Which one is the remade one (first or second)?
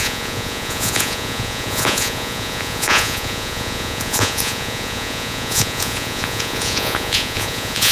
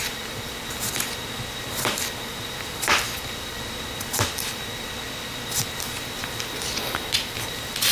first